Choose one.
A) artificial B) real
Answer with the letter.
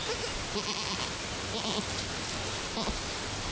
B